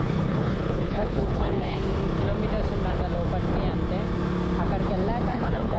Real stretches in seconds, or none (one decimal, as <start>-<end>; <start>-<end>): 1.9-5.3